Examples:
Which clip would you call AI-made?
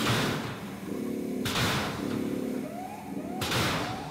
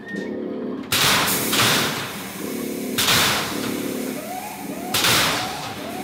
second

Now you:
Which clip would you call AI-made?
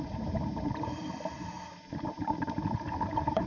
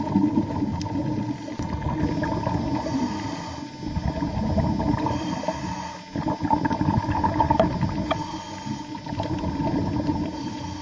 first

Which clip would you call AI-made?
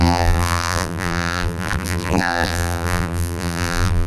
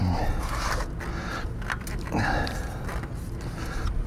first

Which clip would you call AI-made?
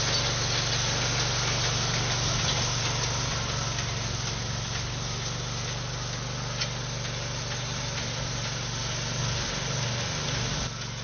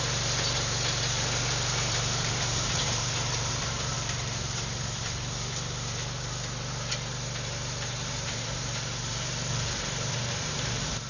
second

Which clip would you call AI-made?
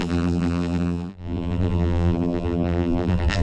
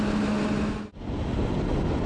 first